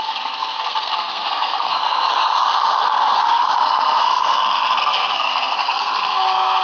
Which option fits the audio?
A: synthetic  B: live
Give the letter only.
A